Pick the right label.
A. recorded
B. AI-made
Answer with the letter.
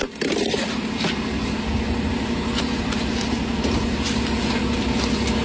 A